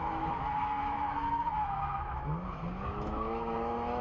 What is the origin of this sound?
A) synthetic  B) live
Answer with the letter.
A